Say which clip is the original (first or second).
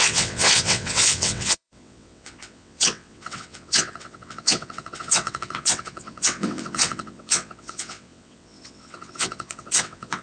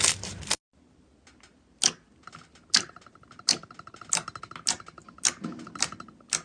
second